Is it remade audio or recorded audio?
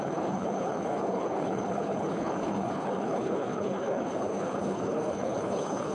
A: remade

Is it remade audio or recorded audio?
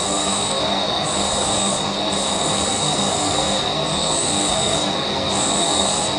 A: remade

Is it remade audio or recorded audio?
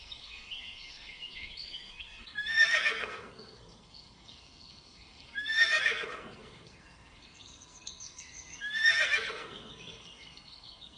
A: remade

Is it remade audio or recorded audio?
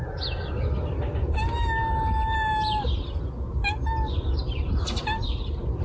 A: recorded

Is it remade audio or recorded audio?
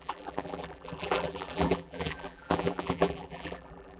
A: remade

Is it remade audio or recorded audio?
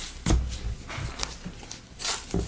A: recorded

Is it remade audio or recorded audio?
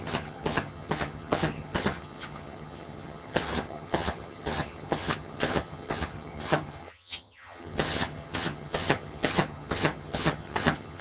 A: remade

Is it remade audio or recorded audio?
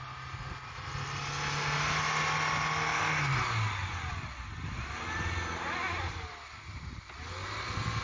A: recorded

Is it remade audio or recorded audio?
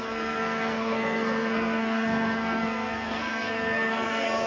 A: remade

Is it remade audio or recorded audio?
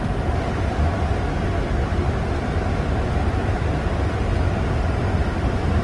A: recorded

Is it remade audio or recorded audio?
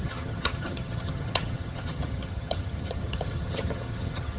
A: remade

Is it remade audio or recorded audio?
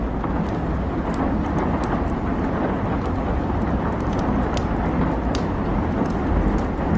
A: recorded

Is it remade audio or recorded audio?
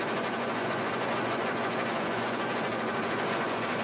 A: remade